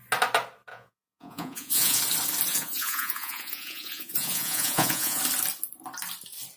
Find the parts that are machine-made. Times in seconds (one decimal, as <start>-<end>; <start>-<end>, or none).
0.7-2.0; 2.5-5.2